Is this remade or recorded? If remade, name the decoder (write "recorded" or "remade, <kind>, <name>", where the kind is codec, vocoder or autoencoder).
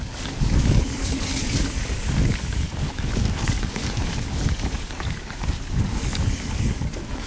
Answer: remade, codec, DAC